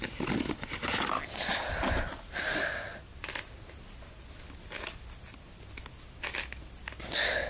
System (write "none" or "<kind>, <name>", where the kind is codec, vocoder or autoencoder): none